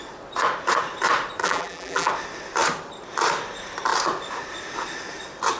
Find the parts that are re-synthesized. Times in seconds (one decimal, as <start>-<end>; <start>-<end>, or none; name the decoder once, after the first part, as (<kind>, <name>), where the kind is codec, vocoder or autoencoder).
1.4-2.1 (vocoder, BigVGAN v2)